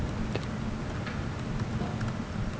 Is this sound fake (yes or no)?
no